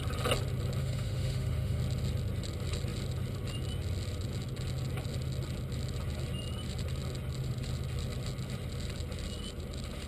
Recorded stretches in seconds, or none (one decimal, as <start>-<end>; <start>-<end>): 0.0-0.8; 1.8-10.1